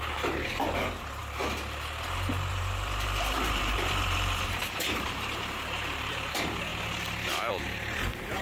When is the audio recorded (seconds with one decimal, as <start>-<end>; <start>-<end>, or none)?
1.2-2.5; 6.7-7.5

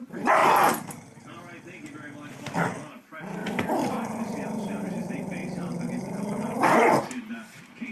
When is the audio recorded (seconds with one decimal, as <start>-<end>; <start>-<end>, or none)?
0.4-2.7; 5.4-6.0

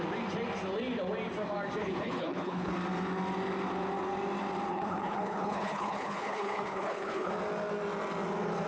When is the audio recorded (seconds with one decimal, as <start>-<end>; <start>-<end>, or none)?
0.0-1.8; 2.7-4.7; 7.3-8.7

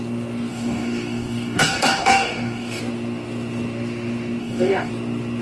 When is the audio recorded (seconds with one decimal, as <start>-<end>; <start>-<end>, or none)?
0.0-0.5; 2.8-4.4; 4.9-5.4

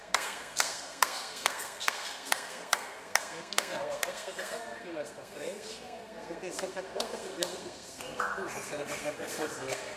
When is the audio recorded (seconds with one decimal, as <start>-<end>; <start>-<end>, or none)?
none

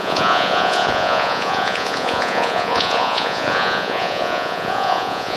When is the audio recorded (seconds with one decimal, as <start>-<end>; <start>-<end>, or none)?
none

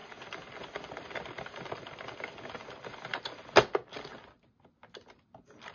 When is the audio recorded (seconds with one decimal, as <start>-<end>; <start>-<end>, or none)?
0.0-5.7